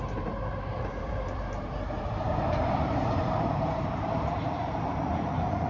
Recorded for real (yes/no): no